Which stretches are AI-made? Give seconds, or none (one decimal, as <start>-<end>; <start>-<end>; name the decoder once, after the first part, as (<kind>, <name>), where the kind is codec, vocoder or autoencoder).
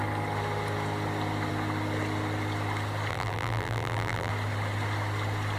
3.1-4.3 (vocoder, BigVGAN v2)